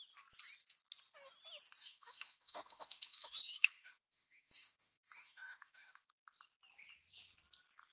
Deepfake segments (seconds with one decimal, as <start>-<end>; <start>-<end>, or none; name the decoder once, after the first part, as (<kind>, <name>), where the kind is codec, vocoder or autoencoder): 1.8-6.2 (autoencoder, DAC-VAE)